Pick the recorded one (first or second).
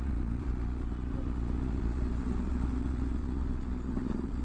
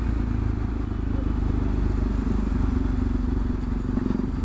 second